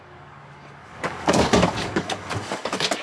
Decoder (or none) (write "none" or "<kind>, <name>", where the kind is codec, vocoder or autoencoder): codec, DAC